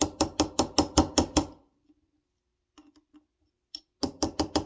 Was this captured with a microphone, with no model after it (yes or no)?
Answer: yes